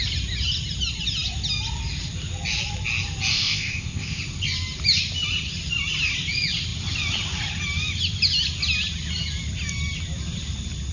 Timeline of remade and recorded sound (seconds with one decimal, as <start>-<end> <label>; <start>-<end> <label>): 0.0-3.3 recorded; 3.3-4.2 remade; 4.2-10.9 recorded